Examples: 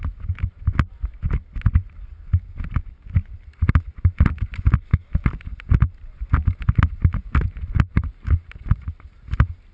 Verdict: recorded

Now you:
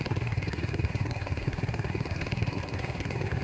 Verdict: remade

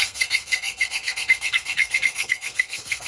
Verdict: remade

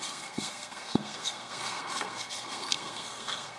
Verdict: remade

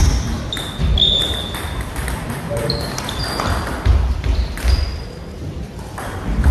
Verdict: recorded